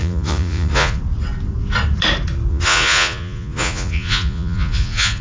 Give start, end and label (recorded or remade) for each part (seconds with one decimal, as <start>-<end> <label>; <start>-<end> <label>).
0.0-1.0 remade; 1.0-2.5 recorded; 2.5-5.2 remade